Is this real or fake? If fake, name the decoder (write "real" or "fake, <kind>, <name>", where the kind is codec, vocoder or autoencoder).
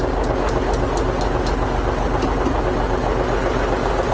real